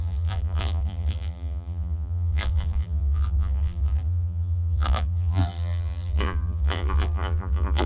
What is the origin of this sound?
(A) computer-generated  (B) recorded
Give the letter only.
A